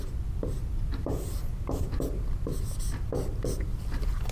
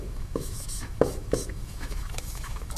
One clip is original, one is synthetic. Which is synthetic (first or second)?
second